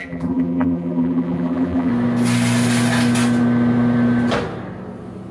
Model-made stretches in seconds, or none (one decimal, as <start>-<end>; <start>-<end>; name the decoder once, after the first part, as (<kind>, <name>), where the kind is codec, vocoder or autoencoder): 0.0-1.9 (vocoder, BigVGAN v2)